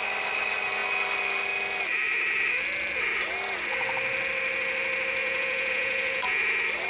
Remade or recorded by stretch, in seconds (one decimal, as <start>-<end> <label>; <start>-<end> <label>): 0.0-5.2 recorded; 5.2-6.4 remade; 6.4-6.9 recorded